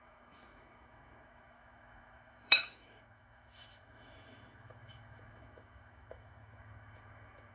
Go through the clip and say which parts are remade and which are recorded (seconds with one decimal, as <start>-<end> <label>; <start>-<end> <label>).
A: 0.0-7.5 remade